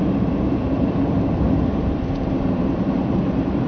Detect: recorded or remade remade